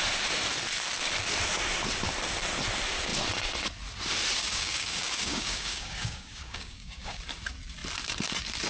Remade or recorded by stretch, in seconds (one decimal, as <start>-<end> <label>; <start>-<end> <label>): 0.0-4.4 recorded; 4.4-7.2 remade; 7.2-8.7 recorded

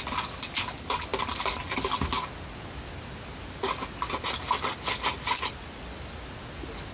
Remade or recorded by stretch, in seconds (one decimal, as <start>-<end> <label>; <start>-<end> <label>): 0.0-6.9 recorded